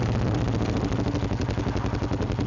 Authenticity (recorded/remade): recorded